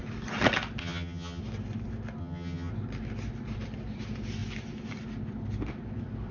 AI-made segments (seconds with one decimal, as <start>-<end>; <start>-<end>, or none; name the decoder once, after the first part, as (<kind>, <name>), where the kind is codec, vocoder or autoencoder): 0.8-1.4 (vocoder, HiFi-GAN); 2.2-2.7